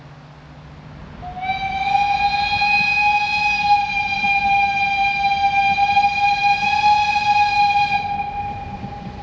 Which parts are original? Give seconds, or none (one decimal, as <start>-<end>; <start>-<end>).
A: 0.0-9.2